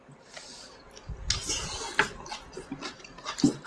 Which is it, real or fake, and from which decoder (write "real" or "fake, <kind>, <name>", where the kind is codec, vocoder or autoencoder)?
real